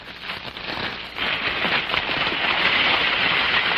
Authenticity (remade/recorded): recorded